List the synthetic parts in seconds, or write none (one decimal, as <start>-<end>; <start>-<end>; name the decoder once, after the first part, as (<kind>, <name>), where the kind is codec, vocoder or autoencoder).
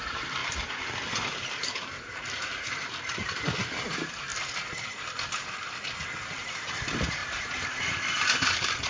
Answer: 0.0-0.4 (vocoder, BigVGAN v2); 1.1-4.3; 6.4-8.9